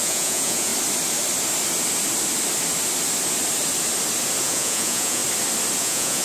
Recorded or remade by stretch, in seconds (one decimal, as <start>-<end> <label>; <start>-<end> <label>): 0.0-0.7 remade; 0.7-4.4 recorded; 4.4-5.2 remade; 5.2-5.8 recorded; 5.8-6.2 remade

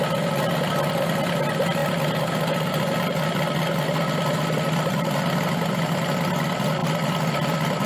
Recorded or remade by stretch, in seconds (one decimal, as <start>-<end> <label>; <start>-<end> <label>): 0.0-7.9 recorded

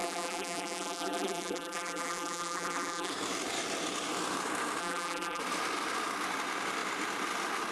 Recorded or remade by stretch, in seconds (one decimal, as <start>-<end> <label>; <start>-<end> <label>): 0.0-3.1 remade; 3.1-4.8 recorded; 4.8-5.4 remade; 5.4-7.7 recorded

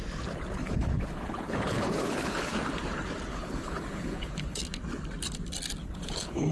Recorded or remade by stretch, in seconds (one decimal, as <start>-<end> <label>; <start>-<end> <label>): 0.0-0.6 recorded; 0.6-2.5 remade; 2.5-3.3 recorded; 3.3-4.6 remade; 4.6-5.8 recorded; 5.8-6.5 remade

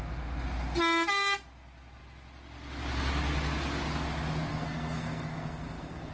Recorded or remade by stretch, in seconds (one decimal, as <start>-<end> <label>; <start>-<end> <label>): 0.0-4.5 recorded; 4.5-6.1 remade